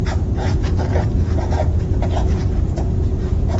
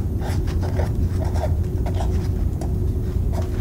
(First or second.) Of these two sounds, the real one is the second